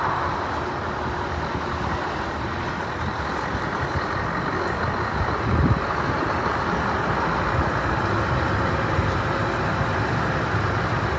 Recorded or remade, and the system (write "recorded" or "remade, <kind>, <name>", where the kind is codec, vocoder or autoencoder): recorded